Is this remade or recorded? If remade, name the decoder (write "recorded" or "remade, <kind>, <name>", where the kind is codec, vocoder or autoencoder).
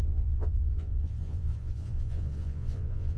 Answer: remade, vocoder, Vocos